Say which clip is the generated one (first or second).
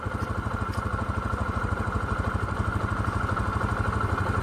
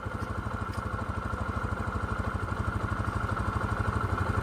first